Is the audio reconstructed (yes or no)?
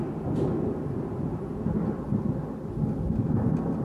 no